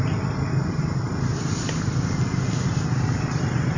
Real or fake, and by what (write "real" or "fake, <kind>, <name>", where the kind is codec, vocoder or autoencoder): real